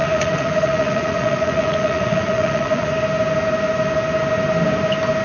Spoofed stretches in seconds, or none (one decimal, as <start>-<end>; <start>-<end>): 0.0-2.9